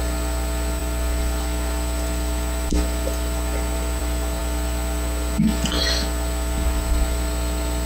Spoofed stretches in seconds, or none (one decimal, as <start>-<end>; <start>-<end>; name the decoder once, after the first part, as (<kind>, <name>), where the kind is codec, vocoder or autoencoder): none